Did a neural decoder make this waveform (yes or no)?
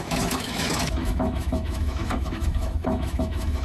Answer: yes